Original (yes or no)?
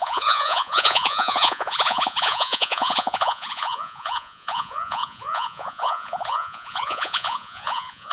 no